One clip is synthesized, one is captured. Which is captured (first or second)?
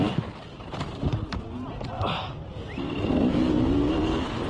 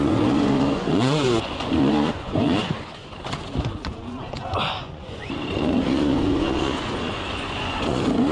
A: first